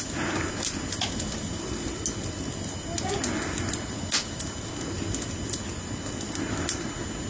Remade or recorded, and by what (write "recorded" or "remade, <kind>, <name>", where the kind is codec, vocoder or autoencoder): recorded